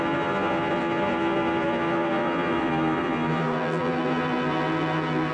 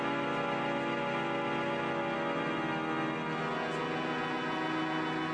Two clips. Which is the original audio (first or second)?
second